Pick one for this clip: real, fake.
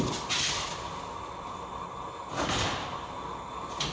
real